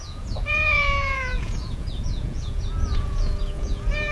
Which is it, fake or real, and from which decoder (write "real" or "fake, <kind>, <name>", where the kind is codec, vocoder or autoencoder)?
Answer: fake, vocoder, Vocos